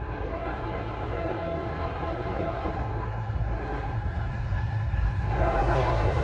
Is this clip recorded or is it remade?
remade